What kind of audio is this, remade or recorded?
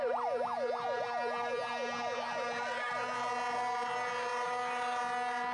recorded